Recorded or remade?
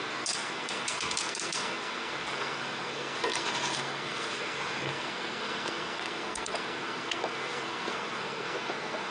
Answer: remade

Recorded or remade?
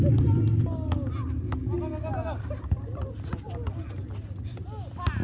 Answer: recorded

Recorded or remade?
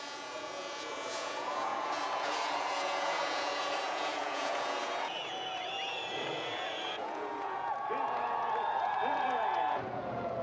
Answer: remade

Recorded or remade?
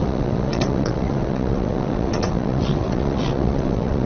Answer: remade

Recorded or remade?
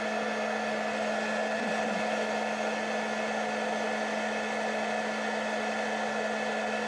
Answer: recorded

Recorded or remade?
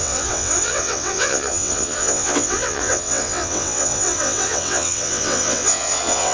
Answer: remade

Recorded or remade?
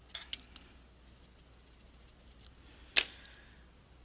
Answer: recorded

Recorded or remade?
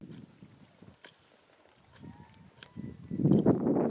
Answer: recorded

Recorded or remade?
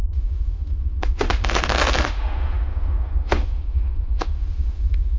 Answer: remade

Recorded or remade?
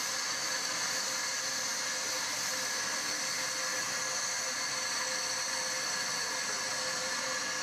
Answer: recorded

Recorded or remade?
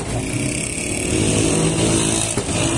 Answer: recorded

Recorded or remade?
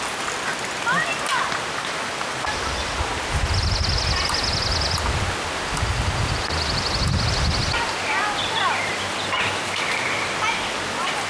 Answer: recorded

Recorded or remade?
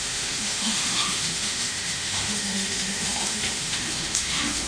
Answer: remade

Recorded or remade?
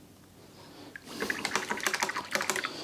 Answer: recorded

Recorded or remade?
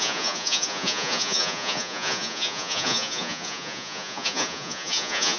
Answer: remade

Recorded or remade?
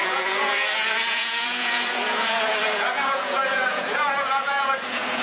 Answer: remade